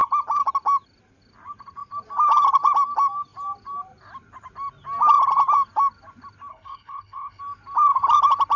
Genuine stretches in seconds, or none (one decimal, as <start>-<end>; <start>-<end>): 0.0-6.5; 7.4-8.6